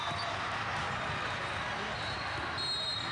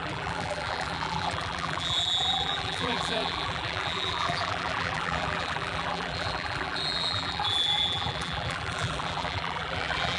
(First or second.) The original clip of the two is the first